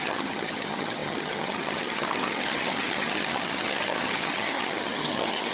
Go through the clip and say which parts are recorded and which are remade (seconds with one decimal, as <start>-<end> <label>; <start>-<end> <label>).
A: 0.0-5.5 remade